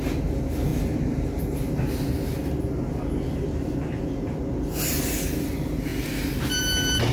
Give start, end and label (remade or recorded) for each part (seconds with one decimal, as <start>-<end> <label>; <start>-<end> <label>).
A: 0.0-7.1 recorded